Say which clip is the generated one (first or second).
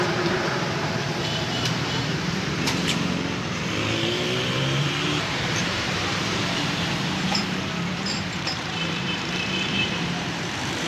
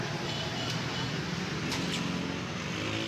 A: first